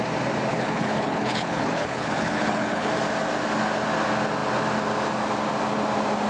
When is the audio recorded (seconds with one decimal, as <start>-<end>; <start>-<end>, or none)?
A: 0.0-0.5; 2.9-6.3